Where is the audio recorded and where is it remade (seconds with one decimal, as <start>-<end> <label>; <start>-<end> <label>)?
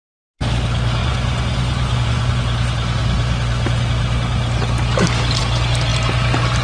0.0-1.0 recorded; 1.0-2.4 remade; 2.4-6.6 recorded